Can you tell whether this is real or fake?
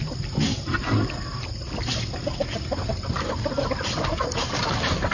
real